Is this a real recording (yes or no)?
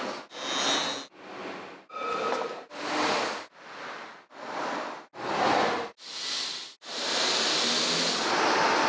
yes